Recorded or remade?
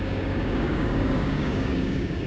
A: remade